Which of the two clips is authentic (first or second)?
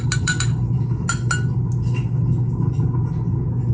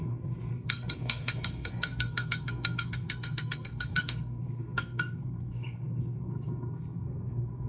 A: first